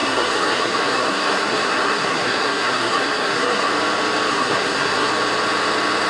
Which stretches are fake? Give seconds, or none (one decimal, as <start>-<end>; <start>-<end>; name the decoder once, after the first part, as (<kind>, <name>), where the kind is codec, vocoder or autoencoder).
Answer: 0.0-3.7 (codec, SNAC); 4.3-5.1